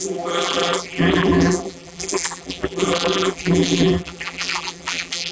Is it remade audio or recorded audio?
remade